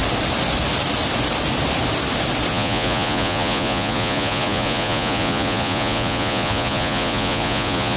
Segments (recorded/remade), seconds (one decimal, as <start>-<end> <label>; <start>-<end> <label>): 0.0-2.5 recorded; 2.5-8.0 remade